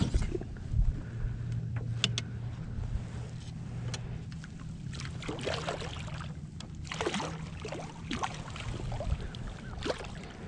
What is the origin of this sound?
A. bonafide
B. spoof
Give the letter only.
A